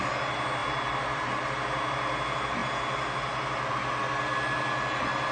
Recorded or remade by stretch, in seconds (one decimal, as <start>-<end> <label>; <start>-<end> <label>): 0.0-5.3 recorded